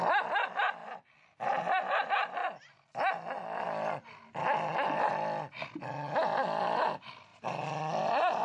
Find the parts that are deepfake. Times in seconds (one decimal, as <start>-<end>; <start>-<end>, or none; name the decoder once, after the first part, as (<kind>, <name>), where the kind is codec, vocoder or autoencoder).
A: 0.0-7.3 (vocoder, BigVGAN v2); 8.0-8.4

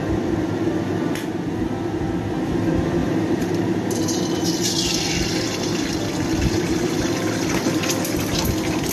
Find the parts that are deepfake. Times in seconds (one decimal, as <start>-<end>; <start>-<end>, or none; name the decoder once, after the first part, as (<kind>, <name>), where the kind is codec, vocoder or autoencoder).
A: 3.0-4.1 (vocoder, BigVGAN v2)

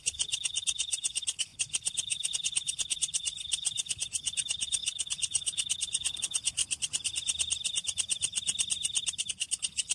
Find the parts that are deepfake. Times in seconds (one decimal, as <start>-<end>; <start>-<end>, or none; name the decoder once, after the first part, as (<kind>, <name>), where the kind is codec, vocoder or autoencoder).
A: 0.0-6.6 (codec, HILCodec); 9.3-9.9

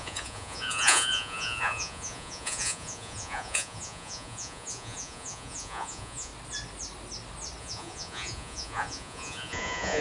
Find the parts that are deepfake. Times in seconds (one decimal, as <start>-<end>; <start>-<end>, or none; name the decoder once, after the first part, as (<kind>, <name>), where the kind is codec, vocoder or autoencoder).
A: 0.0-6.3 (vocoder, Vocos); 7.6-10.0

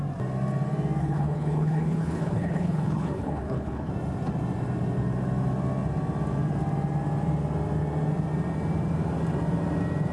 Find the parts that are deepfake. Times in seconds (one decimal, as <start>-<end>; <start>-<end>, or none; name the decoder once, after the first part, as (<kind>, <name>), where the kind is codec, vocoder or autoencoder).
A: 1.0-3.9 (codec, HILCodec)

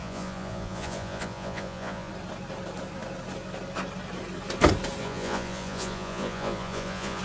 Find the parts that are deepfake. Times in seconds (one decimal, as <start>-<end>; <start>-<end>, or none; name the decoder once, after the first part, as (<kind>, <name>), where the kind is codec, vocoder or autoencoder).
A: 0.0-2.1 (vocoder, Vocos); 5.0-7.2